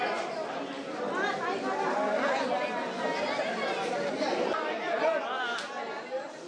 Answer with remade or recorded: recorded